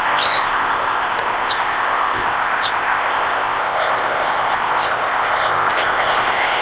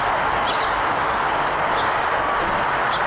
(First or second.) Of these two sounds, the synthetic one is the first